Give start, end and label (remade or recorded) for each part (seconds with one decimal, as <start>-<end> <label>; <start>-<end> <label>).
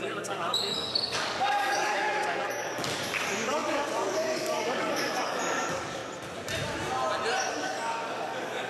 0.0-6.0 remade; 6.0-7.5 recorded; 7.5-8.7 remade